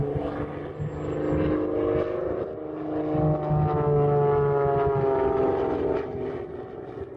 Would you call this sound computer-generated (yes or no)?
no